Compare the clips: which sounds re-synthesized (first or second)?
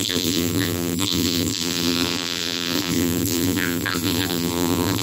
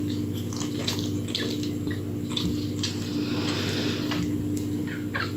first